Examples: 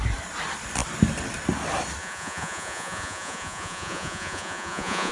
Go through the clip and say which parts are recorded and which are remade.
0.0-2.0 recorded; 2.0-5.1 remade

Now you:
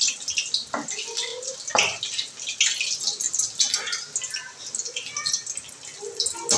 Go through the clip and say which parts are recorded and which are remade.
0.0-6.6 recorded

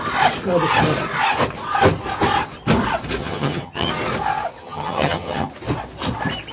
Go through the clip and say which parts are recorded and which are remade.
0.0-3.2 recorded; 3.2-3.9 remade; 3.9-4.6 recorded; 4.6-5.5 remade; 5.5-6.5 recorded

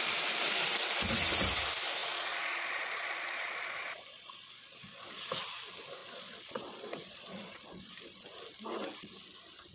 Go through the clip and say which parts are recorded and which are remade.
0.0-2.0 recorded; 2.0-5.2 remade; 5.2-6.0 recorded; 6.0-7.9 remade; 7.9-9.7 recorded

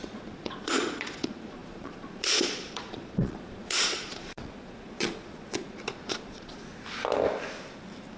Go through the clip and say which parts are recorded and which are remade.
0.0-6.7 remade; 6.7-8.2 recorded

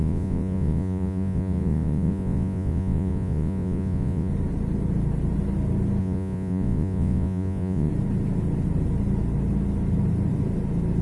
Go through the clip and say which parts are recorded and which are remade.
0.0-4.3 remade; 4.3-6.0 recorded; 6.0-7.9 remade; 7.9-11.0 recorded